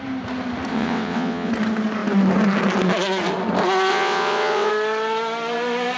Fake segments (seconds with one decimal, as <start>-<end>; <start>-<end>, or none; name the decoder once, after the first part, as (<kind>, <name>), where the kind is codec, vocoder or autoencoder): 0.7-1.5 (vocoder, WaveNeXt); 3.9-4.7